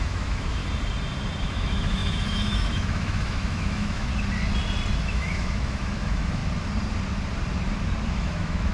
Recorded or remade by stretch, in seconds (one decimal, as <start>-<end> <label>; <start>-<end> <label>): 0.0-0.6 remade; 0.6-1.4 recorded; 1.4-4.1 remade; 4.1-5.0 recorded; 5.0-6.4 remade; 6.4-8.1 recorded; 8.1-8.7 remade